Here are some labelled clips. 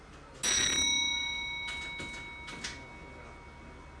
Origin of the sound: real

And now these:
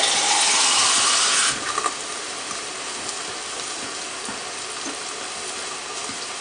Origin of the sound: real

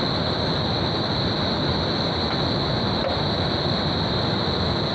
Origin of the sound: real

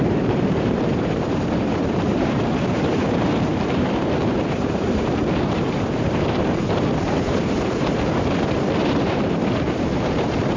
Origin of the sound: fake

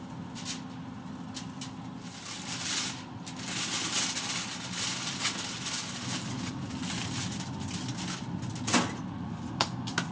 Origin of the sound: real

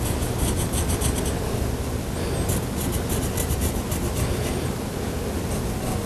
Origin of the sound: real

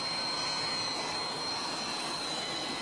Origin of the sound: real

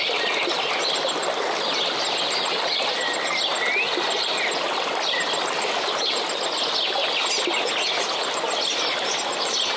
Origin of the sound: real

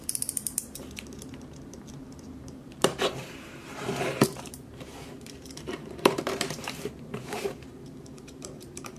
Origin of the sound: fake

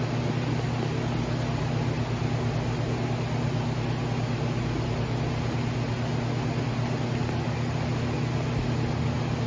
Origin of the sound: real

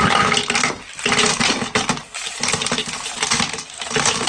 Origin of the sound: real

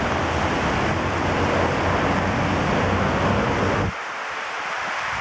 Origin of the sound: real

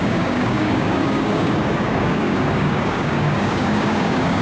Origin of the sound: fake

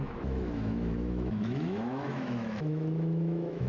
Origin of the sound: fake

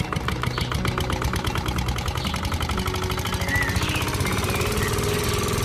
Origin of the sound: real